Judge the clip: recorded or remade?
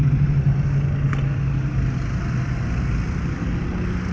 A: recorded